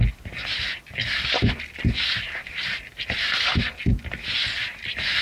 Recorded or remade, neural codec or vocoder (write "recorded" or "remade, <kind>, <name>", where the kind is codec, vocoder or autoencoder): recorded